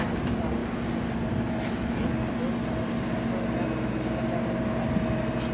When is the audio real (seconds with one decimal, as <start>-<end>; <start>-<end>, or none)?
0.0-5.5